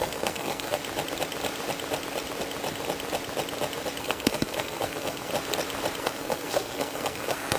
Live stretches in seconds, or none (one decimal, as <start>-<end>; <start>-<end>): 0.8-4.0; 5.3-6.0